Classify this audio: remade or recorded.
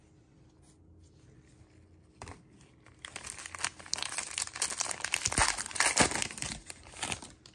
recorded